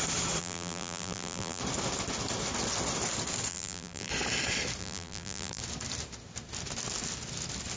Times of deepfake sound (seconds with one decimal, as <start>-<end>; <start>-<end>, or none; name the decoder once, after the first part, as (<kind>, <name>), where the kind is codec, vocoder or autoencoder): 0.4-1.6 (vocoder, BigVGAN v2); 3.5-4.1; 4.8-5.6